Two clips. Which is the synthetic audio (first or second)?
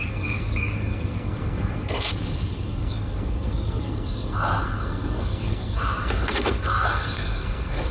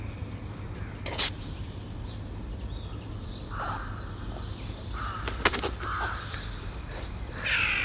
first